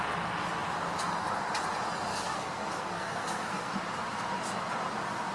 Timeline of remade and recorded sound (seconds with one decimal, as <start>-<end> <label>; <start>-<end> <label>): 0.0-2.1 recorded; 2.1-3.7 remade; 3.7-5.3 recorded